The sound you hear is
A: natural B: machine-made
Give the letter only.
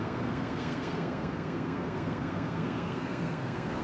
B